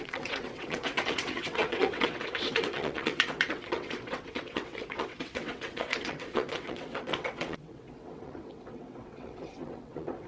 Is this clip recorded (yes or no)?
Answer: no